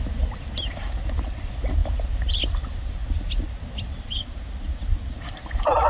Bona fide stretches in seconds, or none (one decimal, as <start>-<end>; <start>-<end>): 0.0-5.9